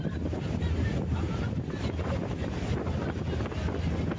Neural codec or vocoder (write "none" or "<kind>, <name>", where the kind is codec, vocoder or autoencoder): none